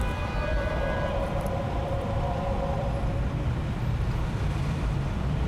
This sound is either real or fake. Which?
fake